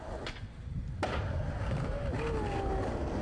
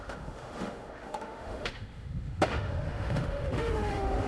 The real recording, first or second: first